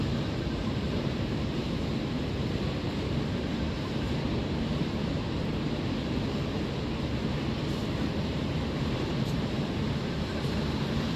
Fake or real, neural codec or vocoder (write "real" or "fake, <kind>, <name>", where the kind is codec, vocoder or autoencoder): real